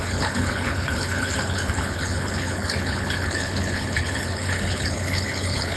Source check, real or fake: fake